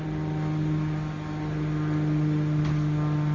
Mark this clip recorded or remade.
recorded